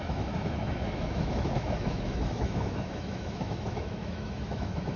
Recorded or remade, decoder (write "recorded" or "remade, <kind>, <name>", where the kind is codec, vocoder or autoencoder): remade, autoencoder, DAC-VAE